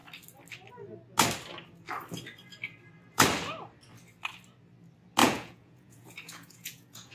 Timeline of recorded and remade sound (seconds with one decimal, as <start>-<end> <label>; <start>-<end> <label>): 0.0-5.2 recorded; 5.2-7.1 remade